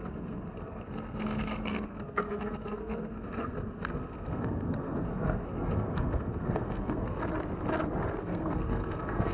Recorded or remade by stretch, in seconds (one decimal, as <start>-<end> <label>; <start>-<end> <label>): 0.0-7.2 remade; 7.2-8.2 recorded; 8.2-9.3 remade